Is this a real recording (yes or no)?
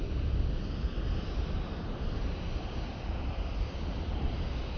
yes